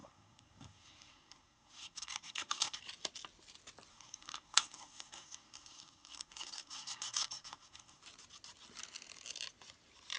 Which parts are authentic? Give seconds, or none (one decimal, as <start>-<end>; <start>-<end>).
2.8-3.9; 8.0-10.2